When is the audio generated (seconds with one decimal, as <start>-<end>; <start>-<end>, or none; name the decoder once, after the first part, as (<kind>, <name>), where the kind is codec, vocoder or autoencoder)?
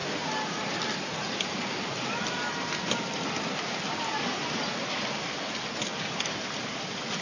none